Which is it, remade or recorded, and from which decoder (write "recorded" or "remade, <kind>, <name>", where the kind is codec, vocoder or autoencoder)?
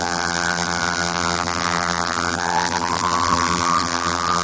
remade, vocoder, BigVGAN v2